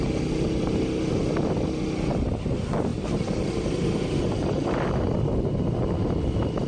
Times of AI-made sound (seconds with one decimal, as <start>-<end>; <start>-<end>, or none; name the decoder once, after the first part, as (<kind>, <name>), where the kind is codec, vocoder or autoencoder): none